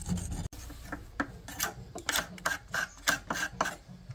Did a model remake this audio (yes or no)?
no